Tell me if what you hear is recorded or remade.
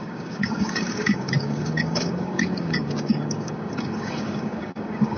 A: remade